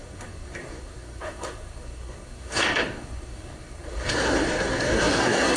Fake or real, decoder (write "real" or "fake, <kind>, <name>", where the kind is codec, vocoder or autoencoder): fake, codec, SNAC